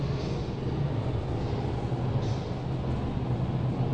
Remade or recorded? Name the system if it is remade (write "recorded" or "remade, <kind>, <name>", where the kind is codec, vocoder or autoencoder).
recorded